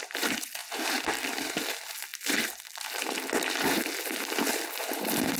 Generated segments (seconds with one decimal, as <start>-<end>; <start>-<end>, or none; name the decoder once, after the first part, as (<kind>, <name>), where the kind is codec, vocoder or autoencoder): none